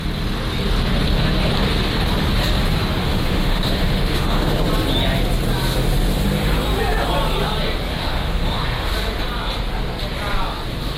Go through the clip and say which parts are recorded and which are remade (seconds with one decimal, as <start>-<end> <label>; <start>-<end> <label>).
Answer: 0.0-3.0 recorded; 3.0-4.6 remade; 4.6-7.9 recorded; 7.9-8.9 remade; 8.9-11.0 recorded